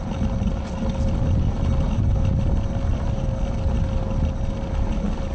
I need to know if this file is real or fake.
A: real